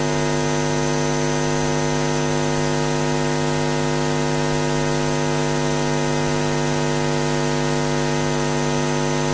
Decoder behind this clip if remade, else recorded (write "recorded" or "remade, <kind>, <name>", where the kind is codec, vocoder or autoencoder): recorded